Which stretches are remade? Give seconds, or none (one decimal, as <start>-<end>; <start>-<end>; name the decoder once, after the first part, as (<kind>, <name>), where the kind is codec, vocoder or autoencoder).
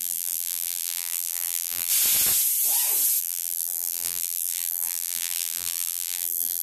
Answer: 0.0-1.9 (vocoder, BigVGAN v2); 3.2-6.6